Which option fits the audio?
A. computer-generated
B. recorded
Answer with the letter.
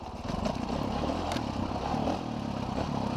B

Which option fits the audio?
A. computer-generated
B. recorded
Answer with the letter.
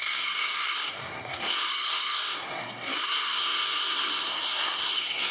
A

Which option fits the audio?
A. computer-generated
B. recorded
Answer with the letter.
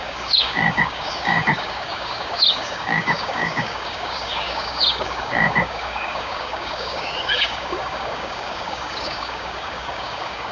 A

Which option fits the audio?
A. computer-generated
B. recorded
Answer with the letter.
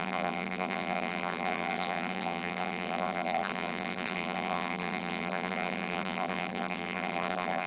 A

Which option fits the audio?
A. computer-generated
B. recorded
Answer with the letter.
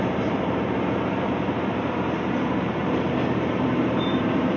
A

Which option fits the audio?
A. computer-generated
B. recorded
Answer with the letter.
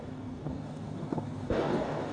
A